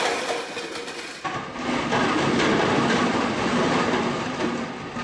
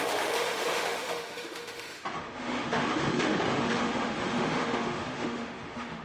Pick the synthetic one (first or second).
second